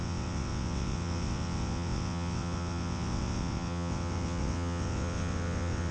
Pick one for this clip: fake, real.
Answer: fake